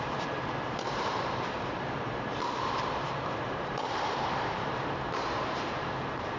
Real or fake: fake